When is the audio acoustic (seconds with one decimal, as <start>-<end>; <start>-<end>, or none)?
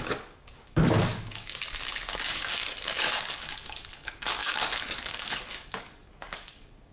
none